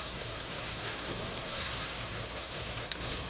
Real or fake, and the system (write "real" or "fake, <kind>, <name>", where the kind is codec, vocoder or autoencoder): fake, codec, SNAC